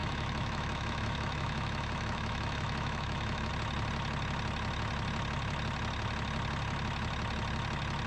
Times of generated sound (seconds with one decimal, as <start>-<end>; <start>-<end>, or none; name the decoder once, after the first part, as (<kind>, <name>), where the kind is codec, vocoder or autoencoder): 0.0-3.5 (autoencoder, DAC-VAE)